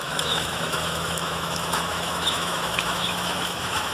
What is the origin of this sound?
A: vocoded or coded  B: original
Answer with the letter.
A